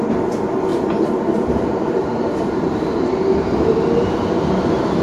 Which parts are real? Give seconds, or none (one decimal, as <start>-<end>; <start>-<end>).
0.0-0.7; 3.7-5.0